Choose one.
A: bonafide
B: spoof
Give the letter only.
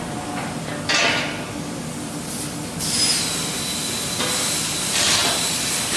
A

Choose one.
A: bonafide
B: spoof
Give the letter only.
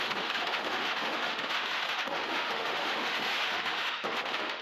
B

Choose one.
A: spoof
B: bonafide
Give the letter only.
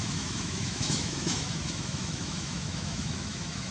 A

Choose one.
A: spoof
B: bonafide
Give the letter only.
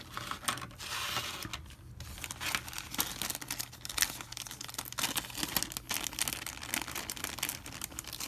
B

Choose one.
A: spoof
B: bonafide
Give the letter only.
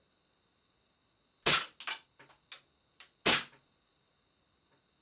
B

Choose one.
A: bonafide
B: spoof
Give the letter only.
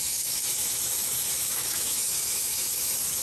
B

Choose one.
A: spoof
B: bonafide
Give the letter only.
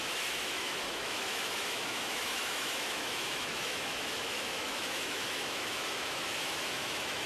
A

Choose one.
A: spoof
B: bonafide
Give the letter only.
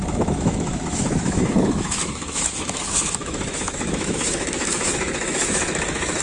A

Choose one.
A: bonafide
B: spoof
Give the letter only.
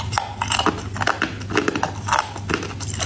A